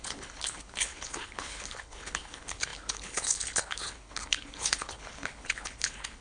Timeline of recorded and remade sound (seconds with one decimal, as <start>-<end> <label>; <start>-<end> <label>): 0.0-6.2 remade